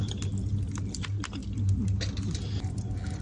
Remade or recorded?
recorded